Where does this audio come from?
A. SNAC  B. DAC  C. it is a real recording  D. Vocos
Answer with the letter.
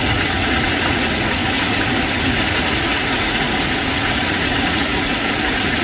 D